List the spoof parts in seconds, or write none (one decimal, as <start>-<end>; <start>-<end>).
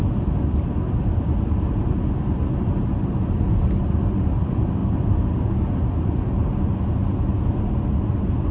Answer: none